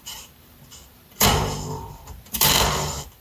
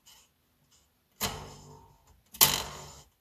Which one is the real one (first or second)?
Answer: second